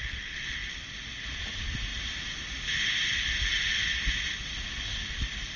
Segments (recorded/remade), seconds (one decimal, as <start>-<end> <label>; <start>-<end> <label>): 0.0-5.6 recorded